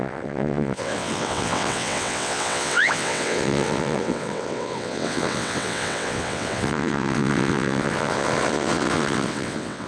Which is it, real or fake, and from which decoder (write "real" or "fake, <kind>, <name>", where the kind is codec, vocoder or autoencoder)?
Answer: fake, vocoder, WaveNeXt